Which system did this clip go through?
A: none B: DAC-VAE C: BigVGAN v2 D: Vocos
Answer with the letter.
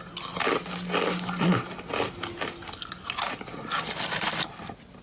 A